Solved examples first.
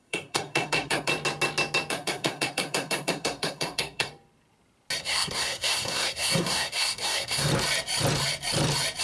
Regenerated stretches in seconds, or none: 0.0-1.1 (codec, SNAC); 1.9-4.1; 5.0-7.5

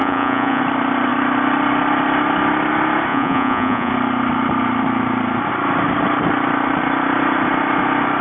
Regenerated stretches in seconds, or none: 0.0-0.6 (vocoder, Vocos); 3.1-3.9

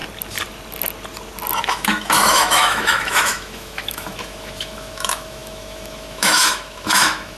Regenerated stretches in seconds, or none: 1.6-7.4 (autoencoder, DAC-VAE)

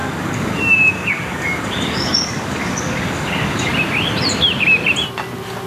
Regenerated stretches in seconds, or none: 0.0-3.7 (codec, DAC)